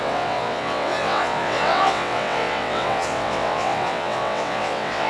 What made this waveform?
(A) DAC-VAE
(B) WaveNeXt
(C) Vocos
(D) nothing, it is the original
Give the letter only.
B